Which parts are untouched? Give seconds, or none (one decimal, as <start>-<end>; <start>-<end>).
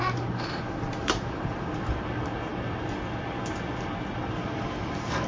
0.0-1.0; 1.6-5.3